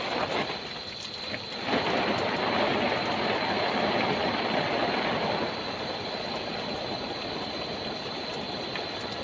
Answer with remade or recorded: recorded